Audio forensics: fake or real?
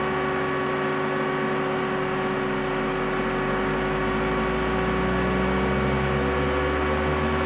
real